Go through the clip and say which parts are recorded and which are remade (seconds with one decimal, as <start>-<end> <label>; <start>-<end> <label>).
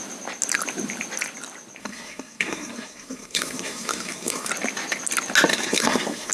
0.0-1.8 recorded; 1.8-4.5 remade; 4.5-5.5 recorded; 5.5-6.3 remade